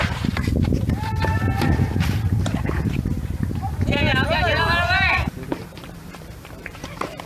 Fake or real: fake